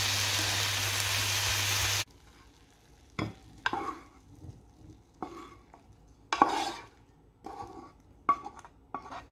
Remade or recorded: recorded